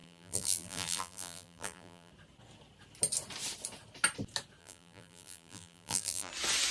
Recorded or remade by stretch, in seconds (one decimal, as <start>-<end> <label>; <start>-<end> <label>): 0.0-2.1 remade; 2.1-4.6 recorded; 4.6-6.3 remade; 6.3-6.7 recorded